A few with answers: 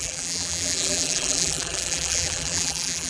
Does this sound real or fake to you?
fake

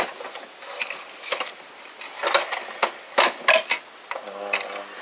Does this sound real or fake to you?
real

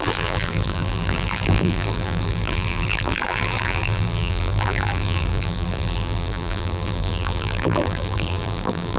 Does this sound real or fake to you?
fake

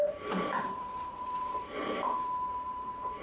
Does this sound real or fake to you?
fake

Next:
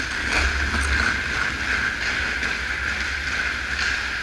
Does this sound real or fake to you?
real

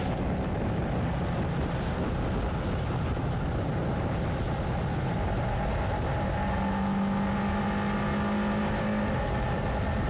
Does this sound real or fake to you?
real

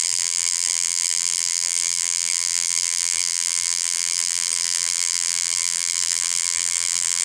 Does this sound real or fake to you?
fake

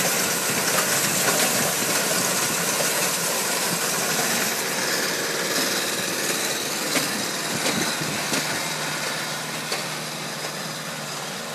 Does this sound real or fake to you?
real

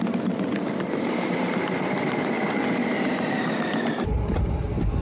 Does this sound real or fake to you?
fake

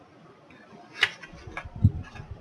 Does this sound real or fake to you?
real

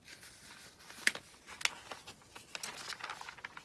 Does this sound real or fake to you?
real